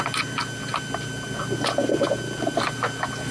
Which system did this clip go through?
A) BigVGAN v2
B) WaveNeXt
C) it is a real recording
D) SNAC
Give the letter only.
C